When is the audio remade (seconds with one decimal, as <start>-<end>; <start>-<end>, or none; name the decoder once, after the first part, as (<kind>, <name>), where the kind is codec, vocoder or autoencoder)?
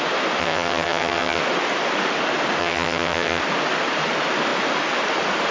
0.4-1.4 (vocoder, HiFi-GAN); 2.6-3.4